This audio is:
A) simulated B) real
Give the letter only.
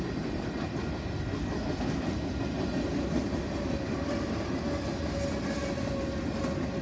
B